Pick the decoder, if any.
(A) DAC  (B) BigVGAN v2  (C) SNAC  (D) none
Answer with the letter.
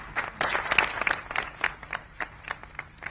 D